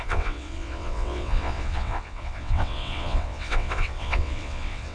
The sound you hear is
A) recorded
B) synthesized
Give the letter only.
B